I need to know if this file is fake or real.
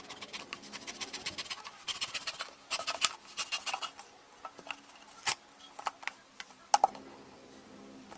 real